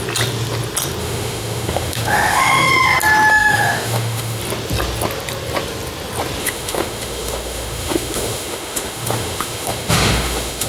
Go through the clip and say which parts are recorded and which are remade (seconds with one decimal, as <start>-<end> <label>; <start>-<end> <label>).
0.0-1.0 recorded; 1.0-2.7 remade; 2.7-3.3 recorded; 3.3-4.4 remade; 4.4-6.4 recorded; 6.4-10.7 remade